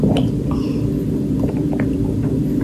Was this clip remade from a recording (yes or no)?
yes